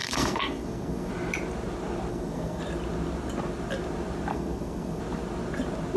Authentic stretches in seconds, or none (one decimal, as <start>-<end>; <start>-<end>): 1.1-2.1; 2.6-4.3; 5.0-6.0